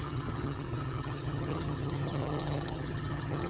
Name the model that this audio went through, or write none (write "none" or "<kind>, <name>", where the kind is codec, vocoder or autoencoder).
vocoder, HiFi-GAN